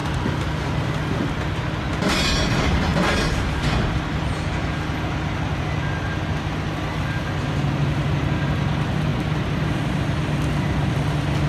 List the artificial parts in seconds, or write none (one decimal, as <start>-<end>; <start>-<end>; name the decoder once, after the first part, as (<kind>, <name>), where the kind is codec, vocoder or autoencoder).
none